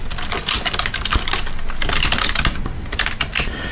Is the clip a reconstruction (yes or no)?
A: no